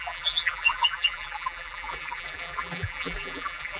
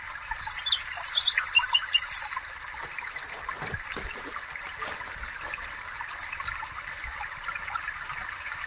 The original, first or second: second